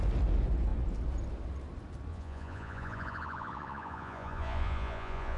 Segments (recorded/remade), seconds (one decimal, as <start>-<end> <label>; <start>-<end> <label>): 0.0-2.1 recorded; 2.1-5.4 remade